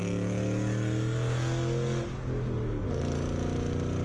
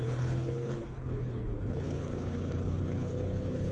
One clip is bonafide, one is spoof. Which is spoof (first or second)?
second